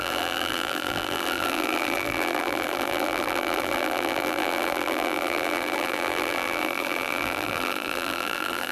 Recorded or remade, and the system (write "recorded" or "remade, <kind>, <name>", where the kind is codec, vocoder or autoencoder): remade, vocoder, BigVGAN v2